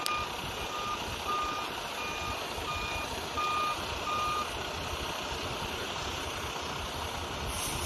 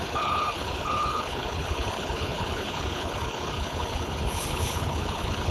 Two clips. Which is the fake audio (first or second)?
second